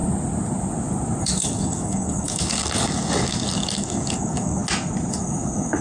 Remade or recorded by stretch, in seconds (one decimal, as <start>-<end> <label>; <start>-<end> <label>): 0.0-1.2 recorded; 1.2-4.6 remade; 4.6-5.1 recorded; 5.1-5.8 remade